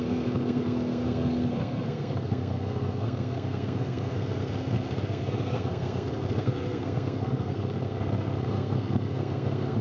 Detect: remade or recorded remade